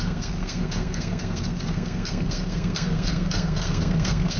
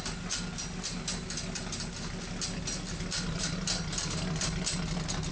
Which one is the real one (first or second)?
second